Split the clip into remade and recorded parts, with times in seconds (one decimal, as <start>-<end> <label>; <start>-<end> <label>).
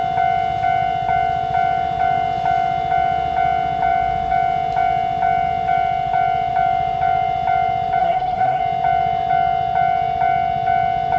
0.0-8.0 recorded; 8.0-8.6 remade; 8.6-11.2 recorded